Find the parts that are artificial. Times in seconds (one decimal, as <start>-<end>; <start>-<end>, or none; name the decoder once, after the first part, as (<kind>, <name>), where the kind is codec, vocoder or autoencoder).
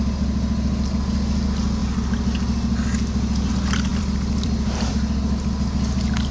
3.9-4.9 (vocoder, BigVGAN v2)